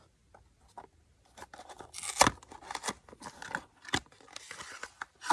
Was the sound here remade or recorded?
recorded